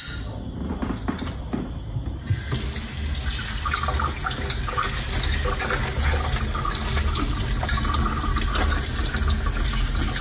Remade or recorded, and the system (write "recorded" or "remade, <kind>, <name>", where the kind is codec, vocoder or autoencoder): recorded